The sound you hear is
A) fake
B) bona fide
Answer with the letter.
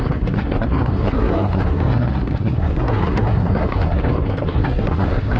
A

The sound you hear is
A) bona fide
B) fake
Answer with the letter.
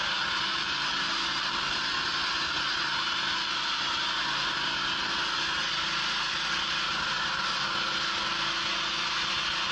A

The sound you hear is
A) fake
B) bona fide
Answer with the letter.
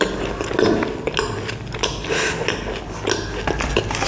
B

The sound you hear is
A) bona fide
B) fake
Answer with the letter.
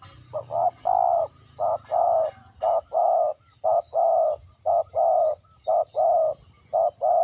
A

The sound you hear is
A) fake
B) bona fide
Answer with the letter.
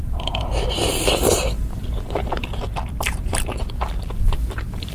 A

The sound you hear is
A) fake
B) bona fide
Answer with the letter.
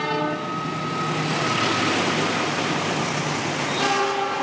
B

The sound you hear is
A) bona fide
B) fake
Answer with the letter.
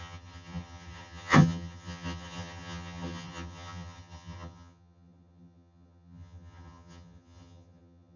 B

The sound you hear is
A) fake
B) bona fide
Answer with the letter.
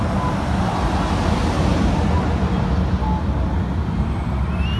B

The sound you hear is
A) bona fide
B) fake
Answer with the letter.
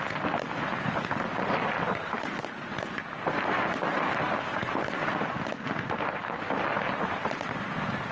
A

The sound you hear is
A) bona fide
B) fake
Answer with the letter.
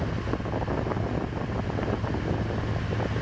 A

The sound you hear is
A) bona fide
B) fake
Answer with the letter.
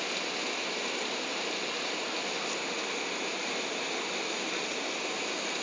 A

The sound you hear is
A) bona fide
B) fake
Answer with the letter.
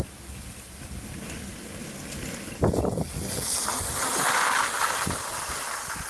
A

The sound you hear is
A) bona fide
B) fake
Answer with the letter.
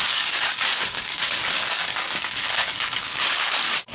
B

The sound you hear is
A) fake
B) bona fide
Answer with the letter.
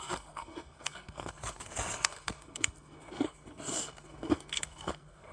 A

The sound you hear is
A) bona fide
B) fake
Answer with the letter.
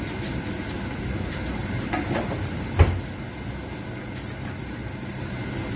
A